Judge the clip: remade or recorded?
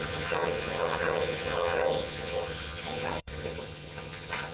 remade